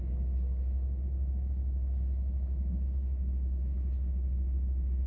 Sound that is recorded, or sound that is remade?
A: recorded